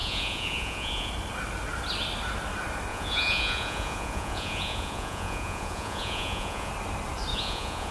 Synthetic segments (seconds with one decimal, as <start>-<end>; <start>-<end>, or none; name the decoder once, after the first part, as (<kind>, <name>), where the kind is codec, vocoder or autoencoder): 0.0-1.1 (vocoder, Vocos); 2.9-6.7; 7.3-7.9

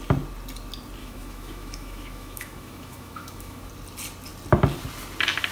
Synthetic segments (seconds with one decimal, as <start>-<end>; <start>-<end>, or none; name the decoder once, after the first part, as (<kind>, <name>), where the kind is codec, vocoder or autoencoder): 1.0-3.7 (autoencoder, DAC-VAE)

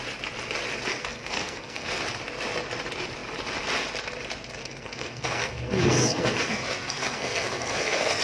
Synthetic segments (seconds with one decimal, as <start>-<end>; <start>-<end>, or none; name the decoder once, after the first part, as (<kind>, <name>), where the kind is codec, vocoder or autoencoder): 0.9-2.0 (codec, SNAC); 4.6-8.2

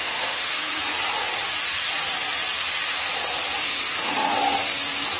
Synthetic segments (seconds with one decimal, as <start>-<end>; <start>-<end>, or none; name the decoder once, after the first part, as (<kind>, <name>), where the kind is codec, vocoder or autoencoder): 0.0-0.5 (autoencoder, DAC-VAE); 3.6-4.3

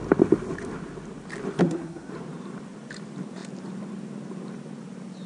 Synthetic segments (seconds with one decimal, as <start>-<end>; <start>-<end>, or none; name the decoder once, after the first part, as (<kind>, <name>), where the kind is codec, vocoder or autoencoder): 1.6-2.1 (codec, SNAC)

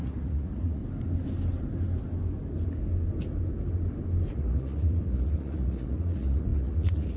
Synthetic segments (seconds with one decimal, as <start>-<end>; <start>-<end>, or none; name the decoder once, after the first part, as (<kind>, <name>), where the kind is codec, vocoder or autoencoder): 0.0-0.8 (vocoder, Vocos); 4.3-7.2

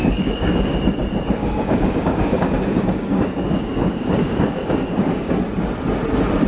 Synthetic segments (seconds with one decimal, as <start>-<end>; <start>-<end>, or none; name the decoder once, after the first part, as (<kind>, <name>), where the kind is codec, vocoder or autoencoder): 0.0-0.8 (codec, DAC); 1.4-5.3